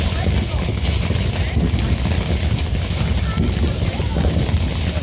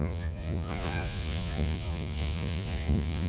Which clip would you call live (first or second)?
first